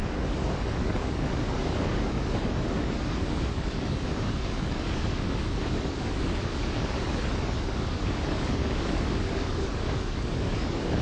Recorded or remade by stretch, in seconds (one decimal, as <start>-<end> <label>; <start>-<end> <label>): 0.0-11.0 remade